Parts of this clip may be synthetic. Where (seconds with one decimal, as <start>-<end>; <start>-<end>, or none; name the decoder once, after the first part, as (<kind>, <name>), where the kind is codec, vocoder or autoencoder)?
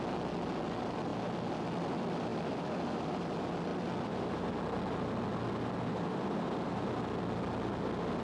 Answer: none